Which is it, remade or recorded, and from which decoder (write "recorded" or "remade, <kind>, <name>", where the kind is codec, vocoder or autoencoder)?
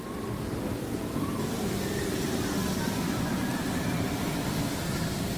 remade, vocoder, BigVGAN v2